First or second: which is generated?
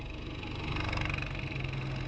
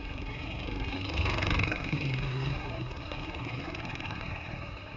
second